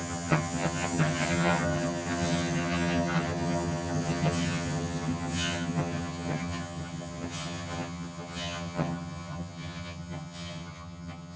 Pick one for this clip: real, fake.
fake